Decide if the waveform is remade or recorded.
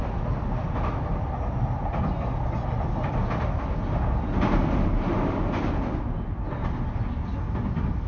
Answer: recorded